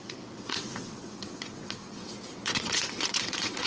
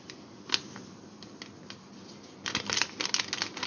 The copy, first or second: first